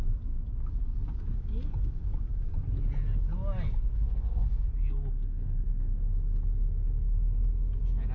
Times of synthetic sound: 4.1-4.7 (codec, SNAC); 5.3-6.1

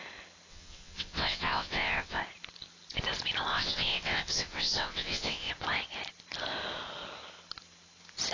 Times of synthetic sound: 0.5-2.2 (vocoder, WaveNeXt); 3.5-5.5

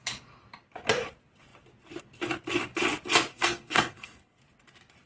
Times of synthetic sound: 3.3-4.4 (codec, SNAC)

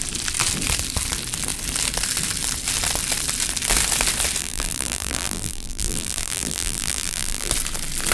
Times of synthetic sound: 4.4-7.5 (vocoder, BigVGAN v2)